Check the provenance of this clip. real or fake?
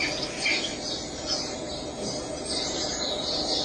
real